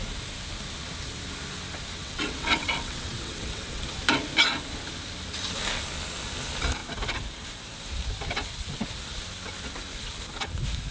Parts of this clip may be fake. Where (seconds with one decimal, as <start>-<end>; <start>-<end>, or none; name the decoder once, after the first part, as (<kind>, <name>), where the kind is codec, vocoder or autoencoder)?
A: 2.0-3.8 (vocoder, WaveNeXt)